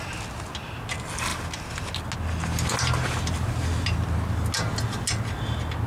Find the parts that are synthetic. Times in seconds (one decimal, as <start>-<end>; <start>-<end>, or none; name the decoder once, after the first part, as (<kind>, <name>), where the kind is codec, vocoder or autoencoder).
1.3-1.9 (vocoder, BigVGAN v2)